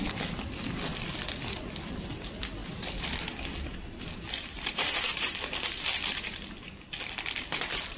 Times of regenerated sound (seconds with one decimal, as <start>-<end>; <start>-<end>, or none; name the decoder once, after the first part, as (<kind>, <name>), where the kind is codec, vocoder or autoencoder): 2.6-7.4 (vocoder, BigVGAN v2)